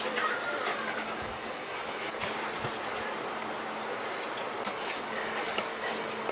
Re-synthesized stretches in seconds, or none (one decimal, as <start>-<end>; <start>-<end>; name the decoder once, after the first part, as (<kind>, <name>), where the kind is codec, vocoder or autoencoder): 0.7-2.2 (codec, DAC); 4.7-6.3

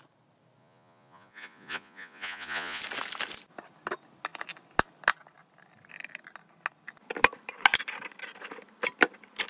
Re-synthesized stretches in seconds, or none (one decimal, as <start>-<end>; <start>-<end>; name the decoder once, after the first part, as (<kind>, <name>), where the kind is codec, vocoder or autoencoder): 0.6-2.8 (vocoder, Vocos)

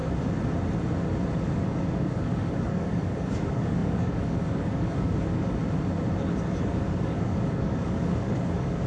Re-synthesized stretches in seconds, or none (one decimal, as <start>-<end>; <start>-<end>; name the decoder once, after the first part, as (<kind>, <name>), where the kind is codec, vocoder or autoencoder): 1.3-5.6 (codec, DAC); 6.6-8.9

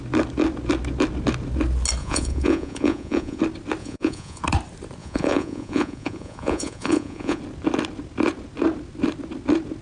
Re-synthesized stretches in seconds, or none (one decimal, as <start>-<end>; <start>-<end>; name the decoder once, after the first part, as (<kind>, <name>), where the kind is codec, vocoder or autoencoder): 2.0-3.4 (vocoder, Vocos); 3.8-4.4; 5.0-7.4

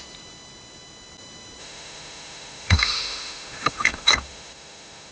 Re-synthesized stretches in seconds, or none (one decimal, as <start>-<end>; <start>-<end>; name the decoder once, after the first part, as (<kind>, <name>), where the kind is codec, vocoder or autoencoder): 1.6-5.1 (autoencoder, DAC-VAE)

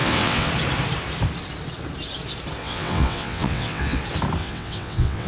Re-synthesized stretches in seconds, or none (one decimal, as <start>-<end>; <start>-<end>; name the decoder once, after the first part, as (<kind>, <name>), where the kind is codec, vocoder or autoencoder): 0.0-0.5 (vocoder, WaveNeXt); 2.6-4.0; 4.4-5.3